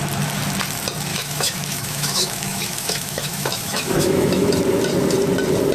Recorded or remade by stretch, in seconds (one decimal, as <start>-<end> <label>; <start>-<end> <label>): 0.0-1.1 recorded; 1.1-4.5 remade; 4.5-5.7 recorded